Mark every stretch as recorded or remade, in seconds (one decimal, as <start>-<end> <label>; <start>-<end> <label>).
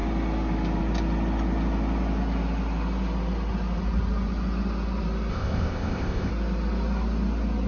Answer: 0.0-5.3 recorded; 5.3-6.3 remade; 6.3-7.7 recorded